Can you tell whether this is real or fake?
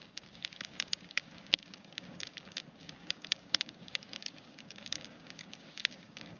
fake